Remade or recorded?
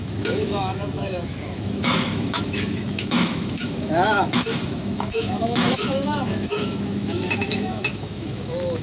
remade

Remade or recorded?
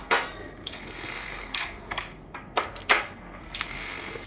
remade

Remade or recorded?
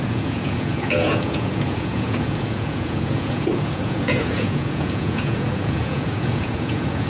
remade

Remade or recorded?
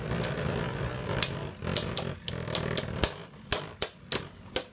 recorded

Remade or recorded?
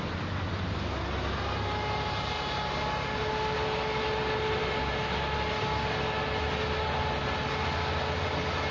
recorded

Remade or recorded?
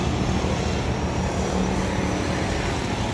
recorded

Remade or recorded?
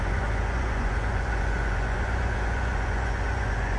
remade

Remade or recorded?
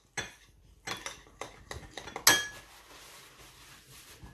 recorded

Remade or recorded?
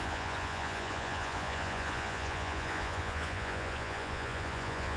remade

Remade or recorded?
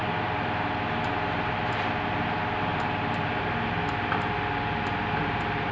recorded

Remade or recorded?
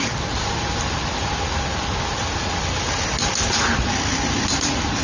recorded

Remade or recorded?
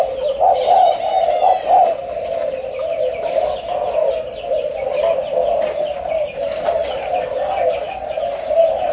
recorded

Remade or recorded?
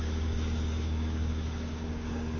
remade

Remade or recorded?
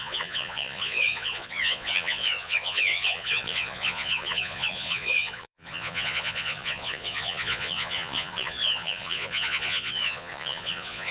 remade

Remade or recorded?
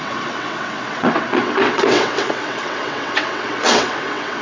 remade